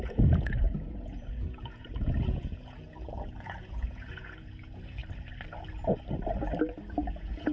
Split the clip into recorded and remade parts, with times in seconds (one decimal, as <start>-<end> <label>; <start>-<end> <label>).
0.0-5.0 remade; 5.0-7.0 recorded; 7.0-7.5 remade